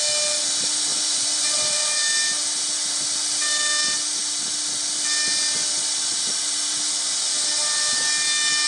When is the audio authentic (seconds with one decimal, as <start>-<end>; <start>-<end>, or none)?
0.0-0.9; 2.0-8.7